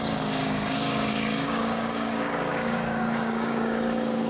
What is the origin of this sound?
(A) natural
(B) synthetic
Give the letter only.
B